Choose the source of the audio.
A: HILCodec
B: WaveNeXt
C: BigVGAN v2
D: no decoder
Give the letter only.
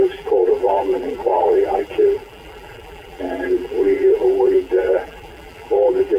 C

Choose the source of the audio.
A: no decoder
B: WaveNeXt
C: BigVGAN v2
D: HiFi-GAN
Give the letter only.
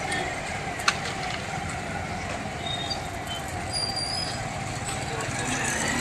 A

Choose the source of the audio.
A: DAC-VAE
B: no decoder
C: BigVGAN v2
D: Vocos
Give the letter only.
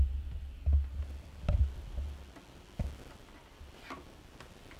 B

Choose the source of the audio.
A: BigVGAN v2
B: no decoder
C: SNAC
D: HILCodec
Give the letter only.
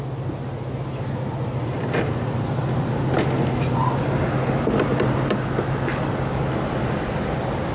B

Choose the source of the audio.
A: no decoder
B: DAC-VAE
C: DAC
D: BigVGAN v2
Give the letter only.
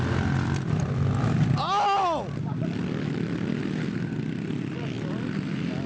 A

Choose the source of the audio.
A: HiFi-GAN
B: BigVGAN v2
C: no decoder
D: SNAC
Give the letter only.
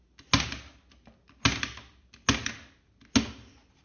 C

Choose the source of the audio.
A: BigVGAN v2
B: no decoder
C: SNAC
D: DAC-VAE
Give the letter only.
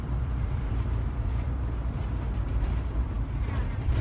A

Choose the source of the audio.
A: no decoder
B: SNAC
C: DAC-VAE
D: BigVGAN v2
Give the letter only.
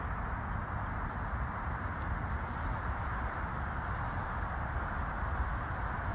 A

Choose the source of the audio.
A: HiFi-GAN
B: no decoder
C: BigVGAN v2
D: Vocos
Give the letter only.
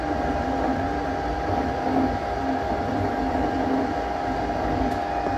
B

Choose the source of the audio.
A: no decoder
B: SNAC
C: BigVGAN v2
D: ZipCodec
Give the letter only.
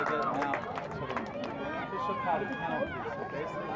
A